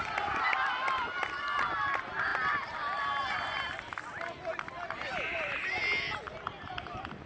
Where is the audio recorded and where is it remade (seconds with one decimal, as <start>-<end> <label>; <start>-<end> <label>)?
0.0-7.3 recorded